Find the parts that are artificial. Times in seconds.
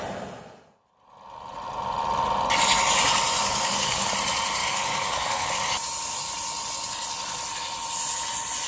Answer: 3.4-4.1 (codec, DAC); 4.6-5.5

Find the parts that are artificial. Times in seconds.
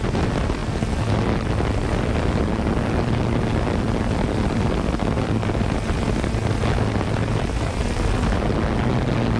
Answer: none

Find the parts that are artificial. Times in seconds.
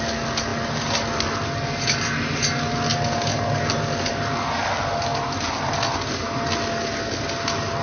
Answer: none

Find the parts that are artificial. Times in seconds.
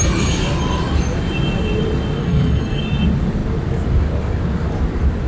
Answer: 2.2-2.8 (codec, SNAC)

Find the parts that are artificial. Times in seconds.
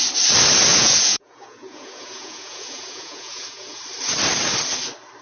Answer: 0.7-3.8 (vocoder, Vocos)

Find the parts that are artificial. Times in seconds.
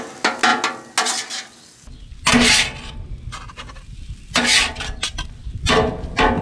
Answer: none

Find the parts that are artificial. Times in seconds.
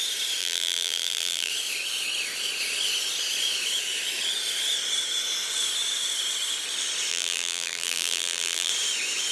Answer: 0.4-1.5 (vocoder, BigVGAN v2); 7.1-8.7